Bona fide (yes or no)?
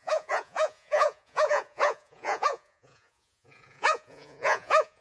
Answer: no